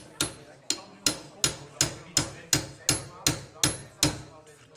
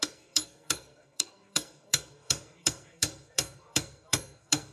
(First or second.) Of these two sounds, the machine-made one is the second